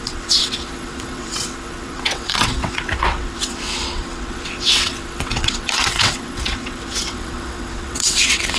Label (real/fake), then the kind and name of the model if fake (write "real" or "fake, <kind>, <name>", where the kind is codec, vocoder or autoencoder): fake, vocoder, WaveNeXt